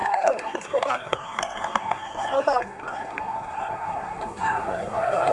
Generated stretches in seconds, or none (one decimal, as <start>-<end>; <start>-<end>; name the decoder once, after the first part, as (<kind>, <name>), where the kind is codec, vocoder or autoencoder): 0.0-5.3 (codec, SNAC)